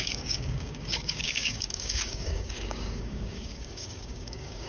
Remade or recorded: remade